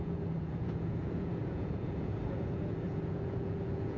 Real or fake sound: fake